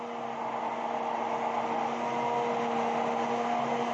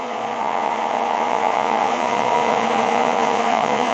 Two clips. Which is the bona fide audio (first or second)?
first